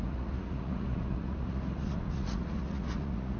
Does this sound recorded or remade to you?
remade